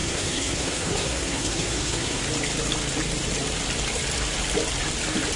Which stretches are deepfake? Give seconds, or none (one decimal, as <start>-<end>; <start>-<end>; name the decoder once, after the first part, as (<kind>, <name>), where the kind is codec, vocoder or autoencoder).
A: 0.0-2.2 (codec, SNAC)